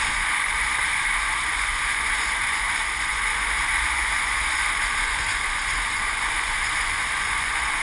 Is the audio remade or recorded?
remade